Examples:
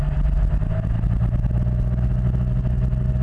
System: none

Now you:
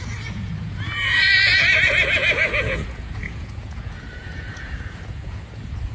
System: vocoder, Vocos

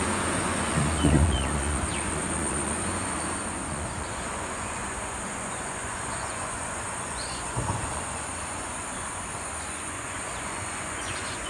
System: vocoder, Vocos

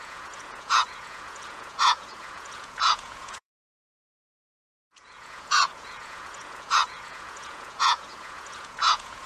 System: vocoder, Vocos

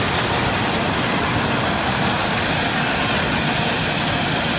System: none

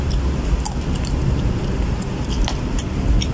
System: none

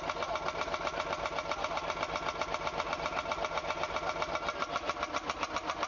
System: none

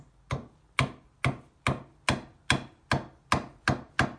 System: none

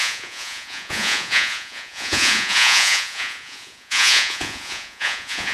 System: vocoder, Vocos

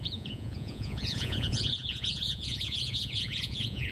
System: vocoder, Vocos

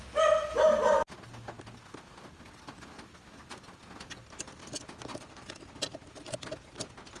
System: none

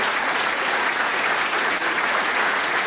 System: vocoder, Vocos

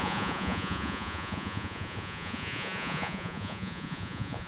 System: vocoder, Vocos